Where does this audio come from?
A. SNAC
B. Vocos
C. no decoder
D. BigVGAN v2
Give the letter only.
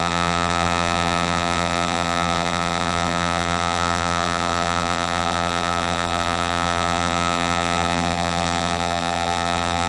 D